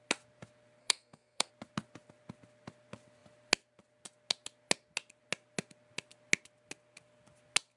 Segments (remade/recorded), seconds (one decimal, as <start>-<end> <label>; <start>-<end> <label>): 0.0-0.8 recorded; 0.8-1.5 remade; 1.5-7.8 recorded